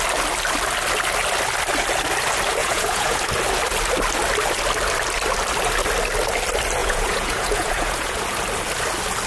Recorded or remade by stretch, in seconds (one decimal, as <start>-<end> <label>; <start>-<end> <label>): 0.0-2.6 recorded; 2.6-3.2 remade; 3.2-6.8 recorded; 6.8-8.2 remade; 8.2-9.3 recorded